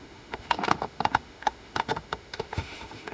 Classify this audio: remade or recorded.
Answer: remade